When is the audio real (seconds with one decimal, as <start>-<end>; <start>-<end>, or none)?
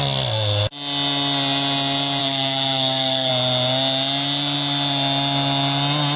0.0-2.2; 3.3-6.2